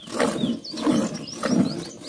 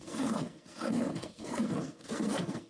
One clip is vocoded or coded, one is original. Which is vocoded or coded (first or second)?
second